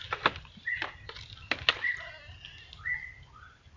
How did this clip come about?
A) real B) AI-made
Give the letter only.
A